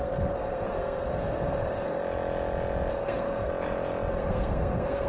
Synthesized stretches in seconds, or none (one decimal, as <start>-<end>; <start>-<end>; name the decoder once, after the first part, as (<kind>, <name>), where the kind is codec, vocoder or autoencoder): 0.0-2.0 (codec, SNAC); 2.9-3.5; 4.1-5.1